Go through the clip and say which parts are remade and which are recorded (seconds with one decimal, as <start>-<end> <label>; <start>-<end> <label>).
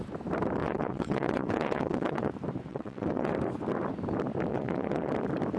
0.0-0.6 recorded; 0.6-2.3 remade; 2.3-2.7 recorded; 2.7-3.3 remade; 3.3-4.5 recorded; 4.5-5.1 remade; 5.1-5.6 recorded